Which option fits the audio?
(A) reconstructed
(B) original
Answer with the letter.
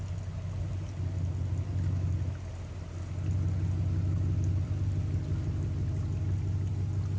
B